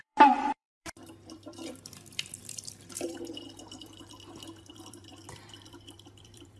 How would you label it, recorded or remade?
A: remade